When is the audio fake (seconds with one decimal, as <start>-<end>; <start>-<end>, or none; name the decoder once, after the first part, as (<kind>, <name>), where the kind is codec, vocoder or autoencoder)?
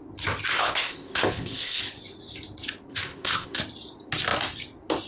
0.5-1.8 (codec, ZipCodec); 2.9-3.6